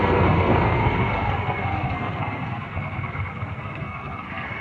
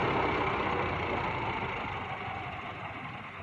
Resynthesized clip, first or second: first